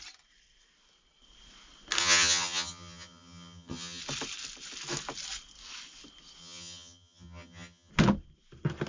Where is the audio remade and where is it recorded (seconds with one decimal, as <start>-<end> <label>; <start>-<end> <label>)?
0.0-2.0 recorded; 2.0-4.0 remade; 4.0-6.4 recorded; 6.4-7.9 remade; 7.9-8.9 recorded